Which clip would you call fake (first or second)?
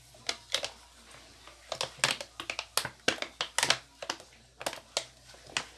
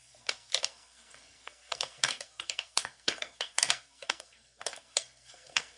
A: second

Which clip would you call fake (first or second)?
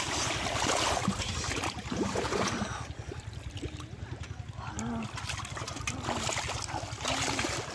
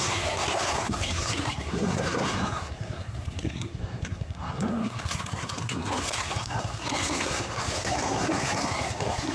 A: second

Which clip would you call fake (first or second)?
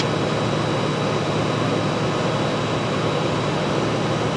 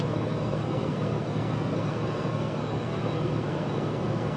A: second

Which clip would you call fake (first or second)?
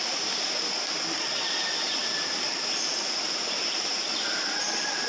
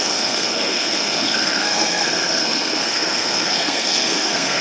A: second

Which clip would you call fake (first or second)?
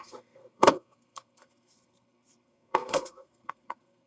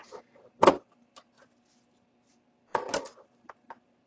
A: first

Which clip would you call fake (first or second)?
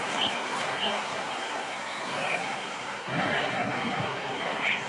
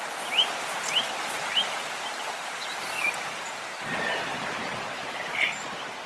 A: first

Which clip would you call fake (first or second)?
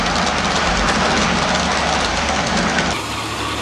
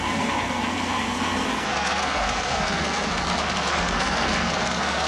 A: second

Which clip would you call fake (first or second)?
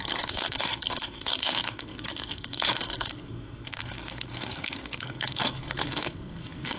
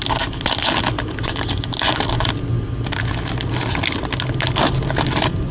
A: first